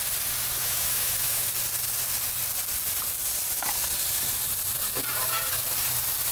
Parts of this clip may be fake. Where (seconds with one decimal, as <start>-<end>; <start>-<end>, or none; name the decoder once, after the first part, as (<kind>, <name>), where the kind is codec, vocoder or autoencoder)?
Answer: 0.6-1.5 (autoencoder, DAC-VAE)